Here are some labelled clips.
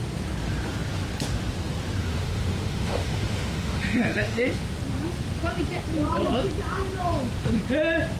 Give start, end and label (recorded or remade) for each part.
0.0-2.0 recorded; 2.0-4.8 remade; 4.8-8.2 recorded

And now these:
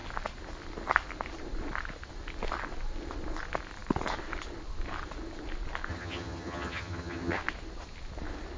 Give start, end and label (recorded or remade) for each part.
0.0-5.9 recorded; 5.9-7.4 remade; 7.4-8.6 recorded

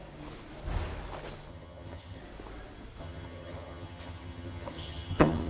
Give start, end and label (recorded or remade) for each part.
0.0-1.5 recorded; 1.5-2.2 remade; 2.2-3.0 recorded; 3.0-5.5 remade

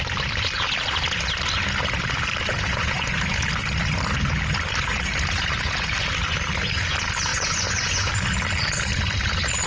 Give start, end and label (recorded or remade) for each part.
0.0-2.5 recorded; 2.5-3.3 remade; 3.3-7.3 recorded; 7.3-8.1 remade; 8.1-9.7 recorded

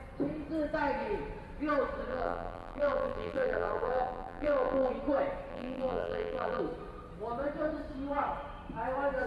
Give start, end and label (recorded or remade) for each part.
0.0-2.1 recorded; 2.1-4.9 remade; 4.9-5.5 recorded; 5.5-6.6 remade; 6.6-9.3 recorded

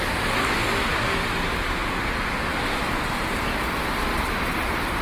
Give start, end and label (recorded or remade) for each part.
0.0-5.0 recorded

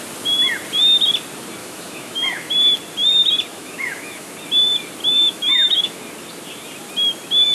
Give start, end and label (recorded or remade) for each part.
0.0-1.6 recorded; 1.6-2.5 remade; 2.5-3.5 recorded; 3.5-4.3 remade; 4.3-5.0 recorded; 5.0-6.0 remade; 6.0-7.5 recorded

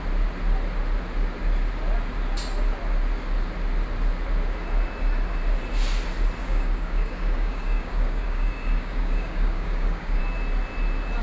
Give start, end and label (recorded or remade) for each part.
0.0-6.4 recorded; 6.4-10.2 remade; 10.2-11.2 recorded